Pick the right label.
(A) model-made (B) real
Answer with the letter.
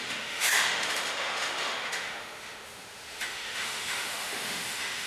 A